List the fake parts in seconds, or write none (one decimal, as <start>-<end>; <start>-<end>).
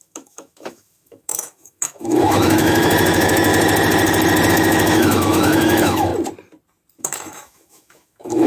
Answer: 0.0-3.5; 4.5-6.1; 7.0-8.5